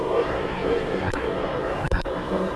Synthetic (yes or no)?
yes